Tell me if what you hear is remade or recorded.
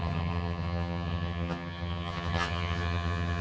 remade